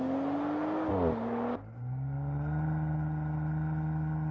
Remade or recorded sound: recorded